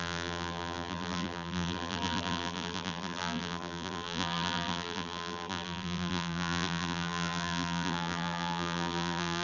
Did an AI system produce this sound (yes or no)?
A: yes